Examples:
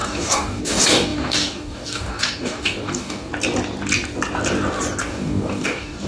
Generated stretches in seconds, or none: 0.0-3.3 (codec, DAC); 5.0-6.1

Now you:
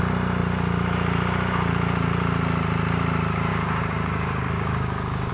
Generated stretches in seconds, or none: 3.5-5.3 (codec, DAC)

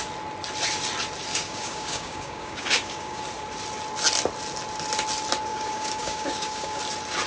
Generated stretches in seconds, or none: 1.3-3.2 (codec, DAC); 5.5-6.8

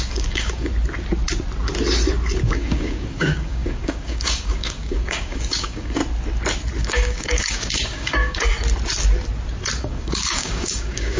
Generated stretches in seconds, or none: 0.0-0.7 (codec, DAC); 2.4-6.0; 6.8-8.5; 9.8-11.2

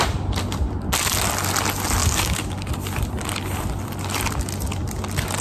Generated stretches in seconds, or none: 2.0-2.7 (codec, DAC)

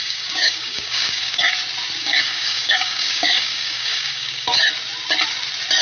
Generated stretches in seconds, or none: 0.0-1.5 (codec, DAC); 2.0-4.6

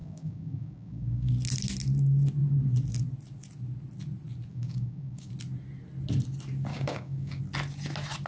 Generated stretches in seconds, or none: 0.0-1.3 (codec, DAC); 4.5-5.3; 6.7-7.4